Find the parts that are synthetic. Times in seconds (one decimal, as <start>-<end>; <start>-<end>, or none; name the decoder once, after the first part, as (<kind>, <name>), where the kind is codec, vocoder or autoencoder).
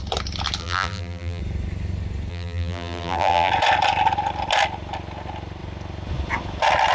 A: 0.6-1.4 (vocoder, BigVGAN v2); 2.3-3.5